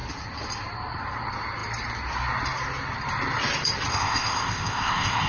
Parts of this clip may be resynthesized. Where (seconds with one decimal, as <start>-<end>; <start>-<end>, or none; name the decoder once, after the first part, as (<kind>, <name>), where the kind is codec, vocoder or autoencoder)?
3.9-5.3 (codec, ZipCodec)